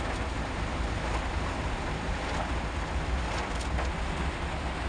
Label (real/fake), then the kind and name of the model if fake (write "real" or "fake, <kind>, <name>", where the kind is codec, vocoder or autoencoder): real